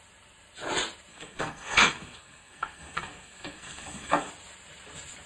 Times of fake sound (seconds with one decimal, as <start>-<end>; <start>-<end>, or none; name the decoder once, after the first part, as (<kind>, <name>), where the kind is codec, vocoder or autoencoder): 1.1-4.3 (codec, SNAC)